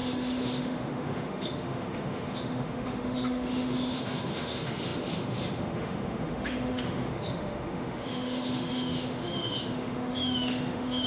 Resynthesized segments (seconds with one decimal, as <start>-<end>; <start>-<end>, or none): 0.0-11.1